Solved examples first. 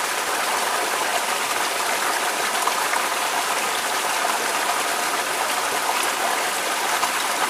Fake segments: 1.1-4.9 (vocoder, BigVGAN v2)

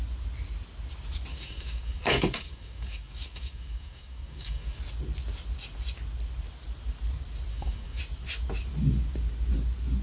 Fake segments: 1.3-4.8 (codec, DAC); 7.5-8.0

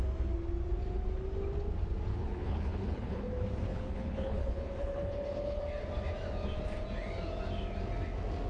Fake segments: 2.1-3.3 (codec, HILCodec); 3.7-5.6